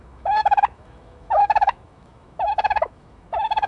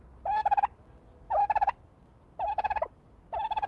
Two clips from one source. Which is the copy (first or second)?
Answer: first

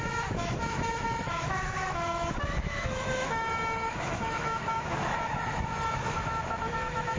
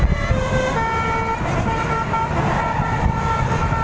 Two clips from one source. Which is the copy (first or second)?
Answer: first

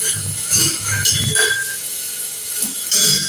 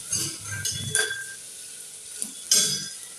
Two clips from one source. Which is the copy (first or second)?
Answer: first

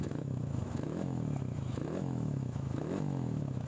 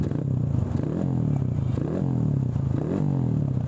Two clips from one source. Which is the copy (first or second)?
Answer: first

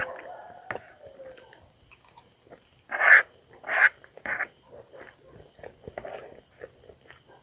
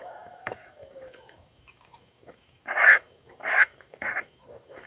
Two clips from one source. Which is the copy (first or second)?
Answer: second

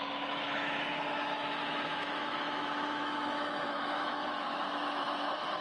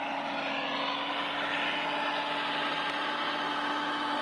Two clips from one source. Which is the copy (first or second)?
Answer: first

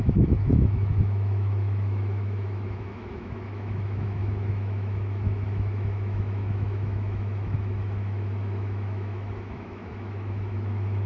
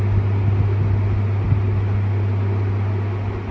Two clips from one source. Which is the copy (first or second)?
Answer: first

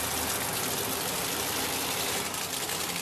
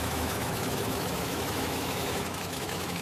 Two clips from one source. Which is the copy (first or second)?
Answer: second